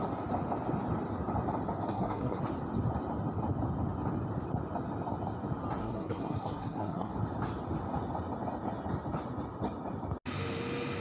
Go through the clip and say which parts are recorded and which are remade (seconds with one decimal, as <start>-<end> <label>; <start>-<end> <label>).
0.0-1.9 recorded; 1.9-2.4 remade; 2.4-5.8 recorded; 5.8-7.1 remade; 7.1-11.0 recorded